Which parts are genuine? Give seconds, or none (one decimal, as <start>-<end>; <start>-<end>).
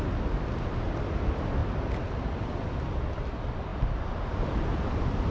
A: 0.0-5.3